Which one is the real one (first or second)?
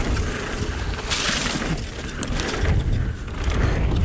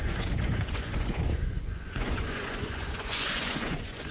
first